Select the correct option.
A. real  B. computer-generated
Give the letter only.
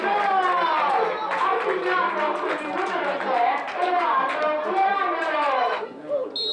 A